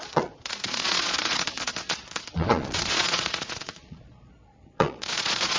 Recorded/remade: remade